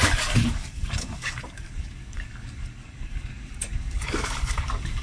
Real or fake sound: fake